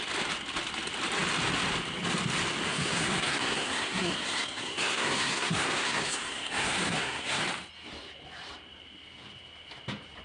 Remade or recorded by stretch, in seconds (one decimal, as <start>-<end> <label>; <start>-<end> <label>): 0.0-2.7 recorded; 2.7-7.4 remade; 7.4-10.2 recorded